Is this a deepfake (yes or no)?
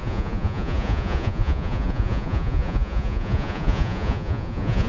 yes